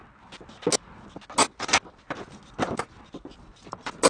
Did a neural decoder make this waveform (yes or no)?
no